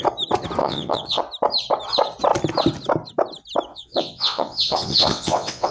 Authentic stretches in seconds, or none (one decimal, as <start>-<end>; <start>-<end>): 0.0-0.6; 1.2-3.7